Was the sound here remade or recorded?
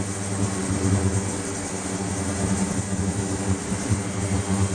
recorded